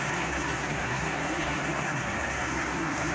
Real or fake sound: fake